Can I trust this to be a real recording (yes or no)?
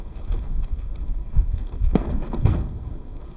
no